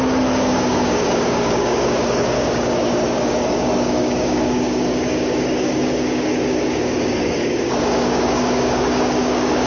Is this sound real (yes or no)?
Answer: no